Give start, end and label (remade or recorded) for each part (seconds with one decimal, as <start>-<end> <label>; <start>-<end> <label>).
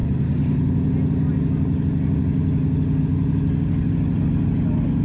0.0-5.0 recorded